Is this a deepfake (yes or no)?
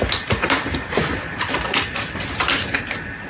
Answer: no